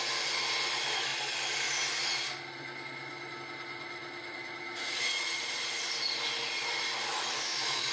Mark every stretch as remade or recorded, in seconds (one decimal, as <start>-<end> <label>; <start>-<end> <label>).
0.0-7.1 recorded; 7.1-7.9 remade